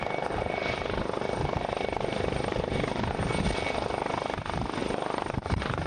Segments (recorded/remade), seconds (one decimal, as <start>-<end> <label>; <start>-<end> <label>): 0.0-3.1 remade; 3.1-4.8 recorded; 4.8-5.9 remade